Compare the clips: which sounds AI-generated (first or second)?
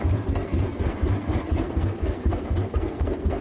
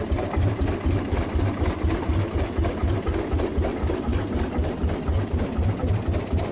first